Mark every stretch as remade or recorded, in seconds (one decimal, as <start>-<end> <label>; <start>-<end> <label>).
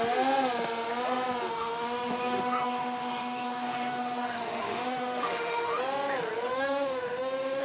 0.0-1.5 recorded; 1.5-5.8 remade; 5.8-6.5 recorded; 6.5-7.6 remade